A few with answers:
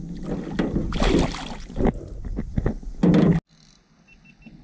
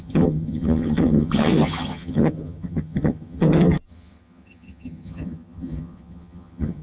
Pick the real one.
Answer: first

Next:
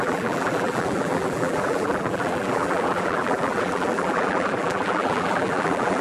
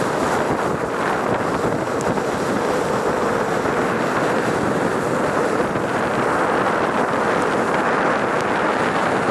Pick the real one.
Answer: second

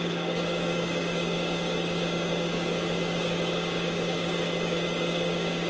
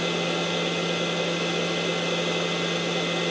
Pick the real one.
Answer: second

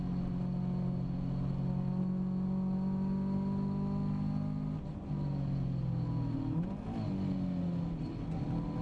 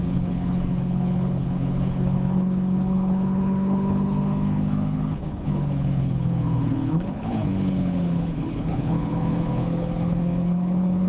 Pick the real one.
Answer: first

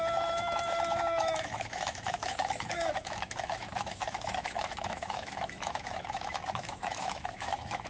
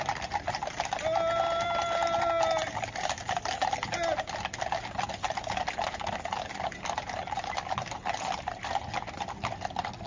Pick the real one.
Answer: second